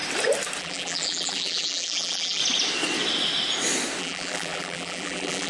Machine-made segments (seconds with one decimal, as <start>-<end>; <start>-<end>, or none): 0.6-2.4; 4.0-5.5